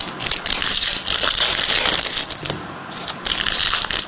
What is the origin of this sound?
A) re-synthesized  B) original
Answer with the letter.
B